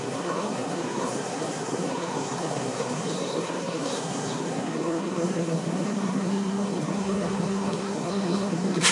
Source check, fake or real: fake